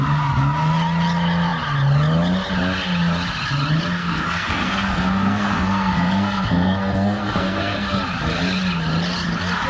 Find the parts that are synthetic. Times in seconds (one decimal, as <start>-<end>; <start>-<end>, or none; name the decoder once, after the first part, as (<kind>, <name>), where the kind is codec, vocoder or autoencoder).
4.0-8.0 (codec, SNAC)